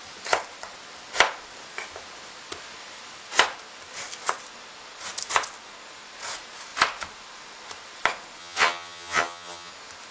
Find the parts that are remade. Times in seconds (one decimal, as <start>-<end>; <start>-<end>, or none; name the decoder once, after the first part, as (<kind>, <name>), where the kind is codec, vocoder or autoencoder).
8.4-9.7 (vocoder, HiFi-GAN)